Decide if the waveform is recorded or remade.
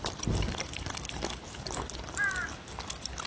recorded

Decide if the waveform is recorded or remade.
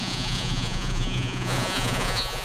remade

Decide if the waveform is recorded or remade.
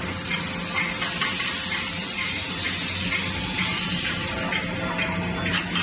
recorded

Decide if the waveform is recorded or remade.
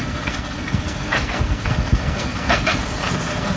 remade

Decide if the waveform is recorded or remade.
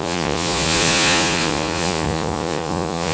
remade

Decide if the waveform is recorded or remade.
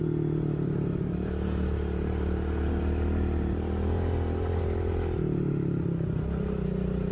recorded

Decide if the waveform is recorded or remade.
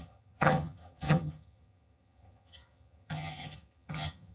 remade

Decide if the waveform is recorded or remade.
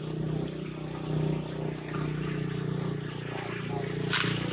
recorded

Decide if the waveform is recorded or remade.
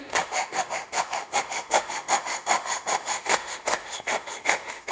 remade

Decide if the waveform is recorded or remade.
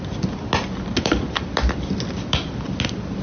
recorded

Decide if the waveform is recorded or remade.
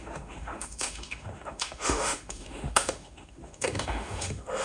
remade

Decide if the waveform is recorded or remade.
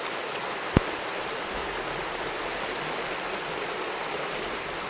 recorded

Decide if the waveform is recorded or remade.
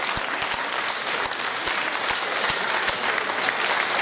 recorded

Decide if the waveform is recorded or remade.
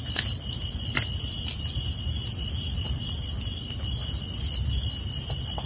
recorded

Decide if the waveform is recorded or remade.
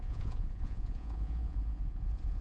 remade